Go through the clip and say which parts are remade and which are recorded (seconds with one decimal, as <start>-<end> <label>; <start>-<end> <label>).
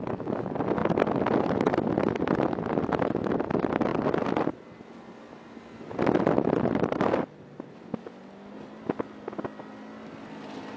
0.0-10.8 recorded